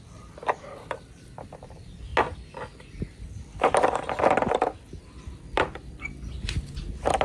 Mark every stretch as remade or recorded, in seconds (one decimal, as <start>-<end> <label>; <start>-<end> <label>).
0.0-2.1 remade; 2.1-5.2 recorded; 5.2-7.2 remade